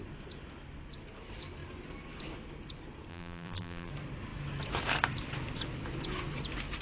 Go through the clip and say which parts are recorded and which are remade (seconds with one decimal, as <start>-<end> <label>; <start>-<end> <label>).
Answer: 0.0-3.1 recorded; 3.1-3.9 remade; 3.9-6.8 recorded